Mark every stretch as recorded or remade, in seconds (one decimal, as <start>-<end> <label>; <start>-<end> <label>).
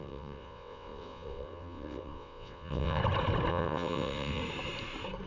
0.0-3.0 remade; 3.0-3.5 recorded; 3.5-4.4 remade; 4.4-5.3 recorded